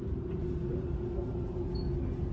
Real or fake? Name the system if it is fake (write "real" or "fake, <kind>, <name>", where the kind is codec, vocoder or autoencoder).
real